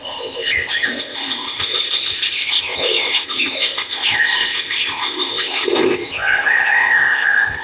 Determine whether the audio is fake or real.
fake